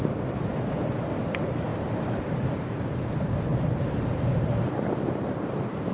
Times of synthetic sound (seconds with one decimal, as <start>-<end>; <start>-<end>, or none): 1.7-3.0; 3.5-5.9